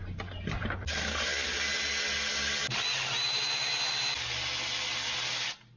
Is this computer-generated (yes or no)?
no